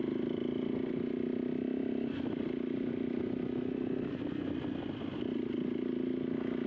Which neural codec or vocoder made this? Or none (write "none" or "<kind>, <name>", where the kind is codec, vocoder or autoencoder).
none